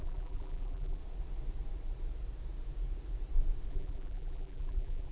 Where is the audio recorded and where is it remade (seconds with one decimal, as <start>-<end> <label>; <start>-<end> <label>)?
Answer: 0.0-1.0 remade; 1.0-3.7 recorded; 3.7-5.1 remade

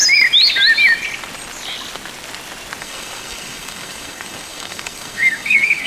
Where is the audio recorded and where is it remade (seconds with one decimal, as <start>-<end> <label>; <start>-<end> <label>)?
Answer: 0.0-2.8 recorded; 2.8-5.9 remade